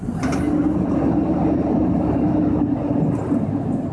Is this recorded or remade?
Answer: recorded